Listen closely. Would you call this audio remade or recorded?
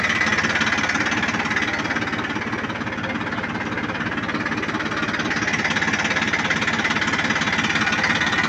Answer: recorded